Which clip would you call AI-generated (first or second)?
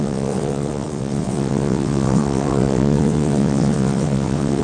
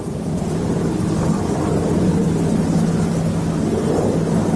first